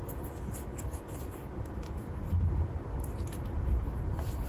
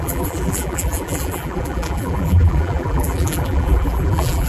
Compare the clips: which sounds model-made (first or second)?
second